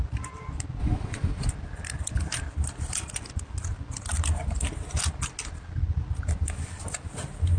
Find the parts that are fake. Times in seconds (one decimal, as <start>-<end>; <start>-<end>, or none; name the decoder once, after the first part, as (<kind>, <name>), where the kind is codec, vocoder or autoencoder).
0.8-1.5 (vocoder, Vocos)